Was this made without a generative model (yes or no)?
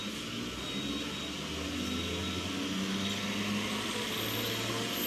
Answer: yes